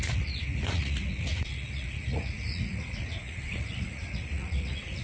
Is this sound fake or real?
fake